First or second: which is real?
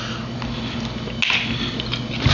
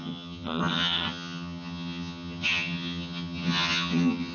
first